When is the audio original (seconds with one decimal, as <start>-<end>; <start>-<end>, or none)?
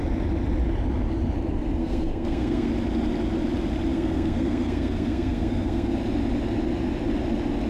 0.0-1.8; 2.7-3.9; 5.9-7.7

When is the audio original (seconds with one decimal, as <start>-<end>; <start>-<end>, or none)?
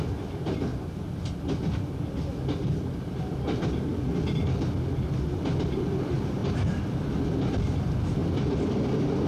0.0-9.3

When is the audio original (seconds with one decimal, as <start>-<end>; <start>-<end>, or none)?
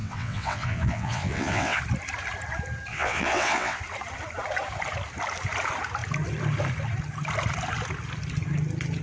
1.8-2.9; 3.8-9.0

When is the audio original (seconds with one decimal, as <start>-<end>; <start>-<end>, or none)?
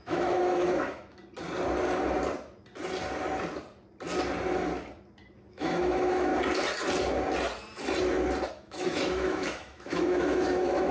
1.2-5.5; 6.3-8.5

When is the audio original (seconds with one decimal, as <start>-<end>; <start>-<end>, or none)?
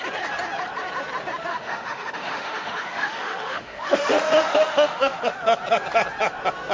0.0-1.5; 5.2-6.7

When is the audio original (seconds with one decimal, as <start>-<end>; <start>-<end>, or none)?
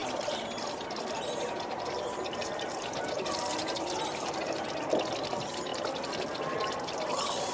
3.2-7.5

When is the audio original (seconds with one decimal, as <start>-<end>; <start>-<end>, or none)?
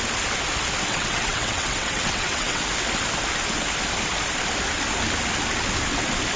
0.0-0.9; 2.6-6.4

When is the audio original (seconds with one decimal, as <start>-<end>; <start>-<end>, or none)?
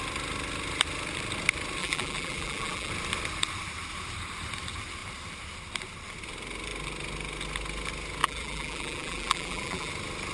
0.0-1.8; 2.9-8.2; 9.9-10.3